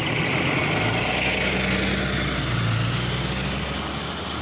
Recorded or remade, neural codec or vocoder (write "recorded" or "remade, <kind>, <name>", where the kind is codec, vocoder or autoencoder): recorded